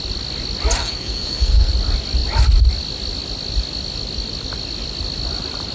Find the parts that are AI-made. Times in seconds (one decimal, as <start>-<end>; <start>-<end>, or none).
0.8-1.7